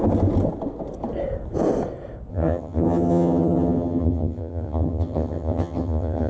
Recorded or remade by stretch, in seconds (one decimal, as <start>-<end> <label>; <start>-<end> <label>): 0.0-2.3 recorded; 2.3-6.3 remade